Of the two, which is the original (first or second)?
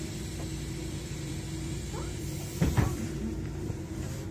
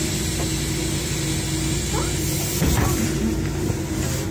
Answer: second